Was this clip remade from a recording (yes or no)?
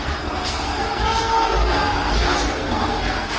yes